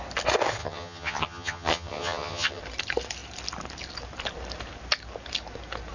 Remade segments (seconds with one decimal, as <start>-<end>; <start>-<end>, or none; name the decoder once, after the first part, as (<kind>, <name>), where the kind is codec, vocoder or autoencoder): 0.6-2.6 (vocoder, HiFi-GAN)